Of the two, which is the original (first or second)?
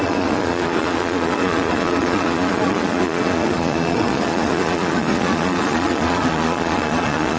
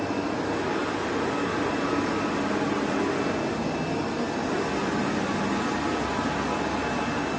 second